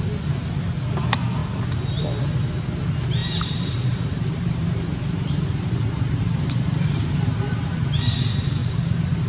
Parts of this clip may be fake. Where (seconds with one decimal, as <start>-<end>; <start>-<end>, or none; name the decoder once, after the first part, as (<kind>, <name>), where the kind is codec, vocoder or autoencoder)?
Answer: 3.2-8.1 (vocoder, BigVGAN v2); 8.6-9.3

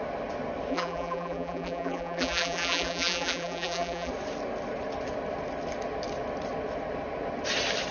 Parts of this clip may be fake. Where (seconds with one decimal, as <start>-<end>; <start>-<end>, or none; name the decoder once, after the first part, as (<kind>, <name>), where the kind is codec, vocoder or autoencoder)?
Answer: 0.7-4.1 (vocoder, BigVGAN v2)

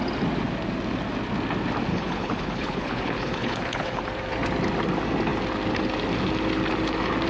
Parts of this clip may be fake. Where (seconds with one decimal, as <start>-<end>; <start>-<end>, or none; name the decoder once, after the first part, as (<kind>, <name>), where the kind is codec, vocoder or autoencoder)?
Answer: 1.9-4.0 (codec, HILCodec)

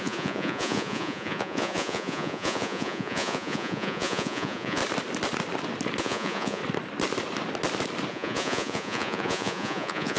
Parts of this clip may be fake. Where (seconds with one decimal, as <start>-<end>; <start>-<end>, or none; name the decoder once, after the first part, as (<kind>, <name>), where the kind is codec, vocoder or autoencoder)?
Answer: 0.0-4.8 (vocoder, Vocos); 6.0-6.6; 8.1-10.2